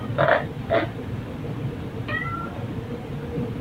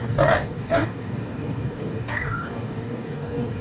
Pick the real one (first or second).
first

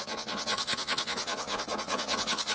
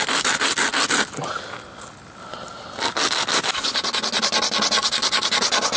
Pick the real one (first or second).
second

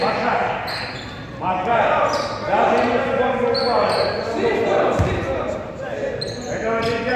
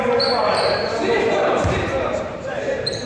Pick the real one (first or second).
first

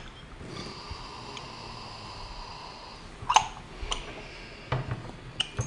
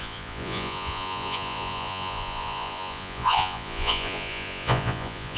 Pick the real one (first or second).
first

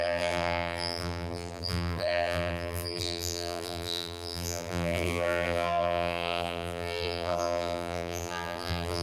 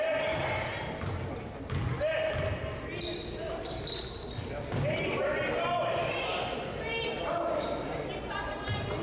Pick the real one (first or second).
second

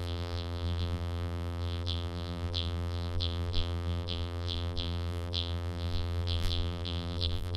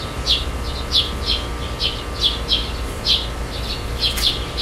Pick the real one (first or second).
second